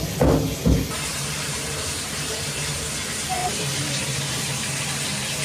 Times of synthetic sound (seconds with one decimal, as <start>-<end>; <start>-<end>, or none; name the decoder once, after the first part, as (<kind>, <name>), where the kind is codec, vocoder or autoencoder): 1.1-2.9 (vocoder, BigVGAN v2); 3.4-4.8